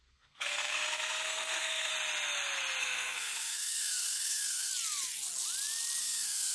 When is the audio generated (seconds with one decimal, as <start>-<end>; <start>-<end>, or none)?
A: 0.0-1.9; 2.8-4.7; 6.0-6.5